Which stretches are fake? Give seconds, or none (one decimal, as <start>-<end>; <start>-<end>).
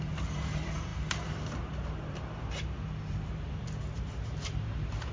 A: 0.0-5.1